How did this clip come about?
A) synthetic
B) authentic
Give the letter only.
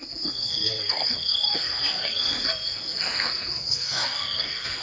A